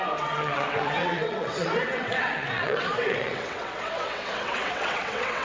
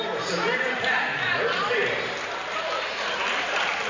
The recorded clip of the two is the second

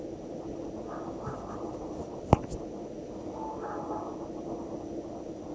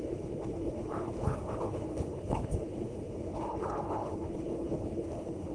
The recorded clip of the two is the first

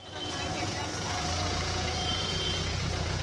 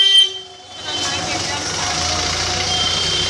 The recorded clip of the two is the second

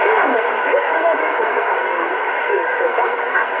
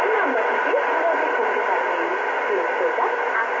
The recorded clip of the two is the second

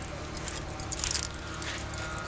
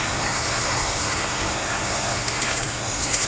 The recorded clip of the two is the first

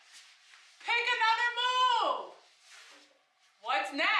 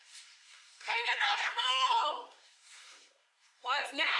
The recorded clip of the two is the first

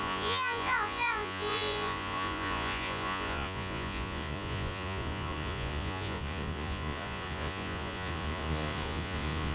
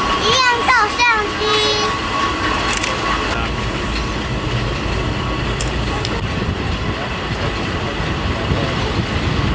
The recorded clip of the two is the second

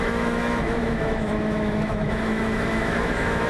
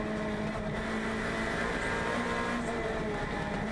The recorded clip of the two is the second